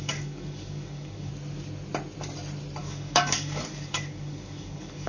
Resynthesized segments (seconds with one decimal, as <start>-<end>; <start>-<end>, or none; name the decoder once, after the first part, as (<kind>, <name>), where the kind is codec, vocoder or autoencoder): 0.0-1.3 (codec, DAC); 2.8-5.1